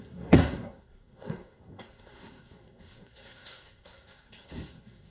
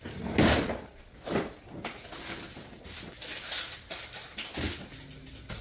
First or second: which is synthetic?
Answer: first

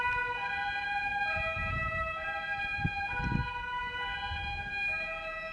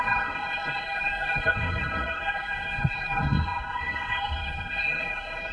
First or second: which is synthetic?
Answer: second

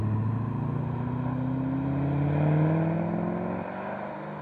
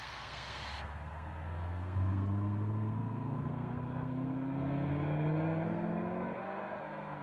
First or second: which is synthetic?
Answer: second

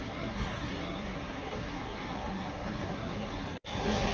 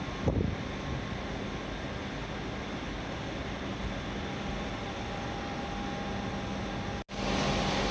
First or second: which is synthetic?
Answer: first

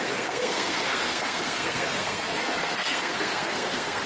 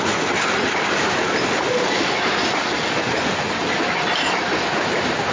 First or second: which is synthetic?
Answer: first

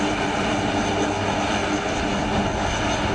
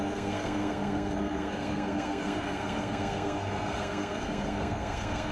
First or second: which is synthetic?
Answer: second